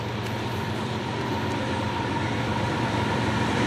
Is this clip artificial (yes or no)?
yes